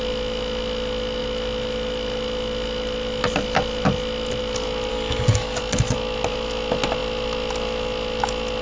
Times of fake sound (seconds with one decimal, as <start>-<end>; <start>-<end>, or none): 4.9-5.6